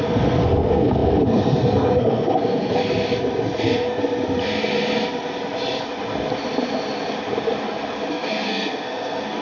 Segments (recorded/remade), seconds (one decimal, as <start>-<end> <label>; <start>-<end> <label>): 0.0-2.8 remade; 2.8-3.6 recorded; 3.6-4.0 remade; 4.0-8.1 recorded; 8.1-9.4 remade